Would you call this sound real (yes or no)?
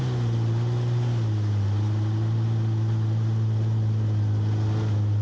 yes